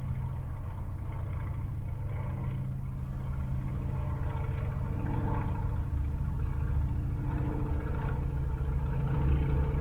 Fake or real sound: real